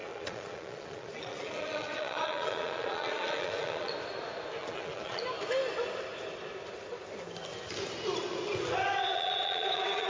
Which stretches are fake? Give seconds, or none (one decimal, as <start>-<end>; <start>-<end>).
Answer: 0.0-3.9; 4.6-5.2; 9.1-10.1